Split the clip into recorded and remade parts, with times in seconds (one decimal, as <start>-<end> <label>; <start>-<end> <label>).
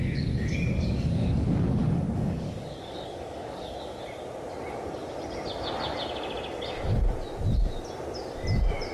0.0-4.0 remade; 4.0-8.9 recorded